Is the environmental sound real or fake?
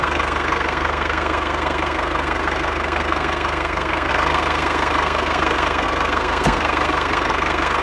fake